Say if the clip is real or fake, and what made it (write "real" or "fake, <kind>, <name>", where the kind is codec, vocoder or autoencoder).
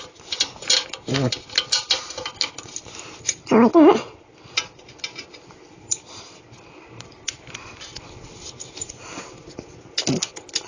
real